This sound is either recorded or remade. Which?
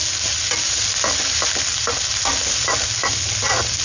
recorded